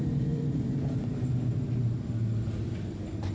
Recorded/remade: remade